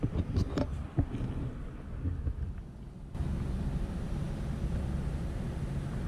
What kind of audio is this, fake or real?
real